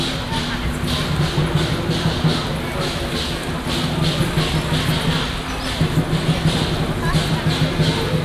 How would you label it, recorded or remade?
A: recorded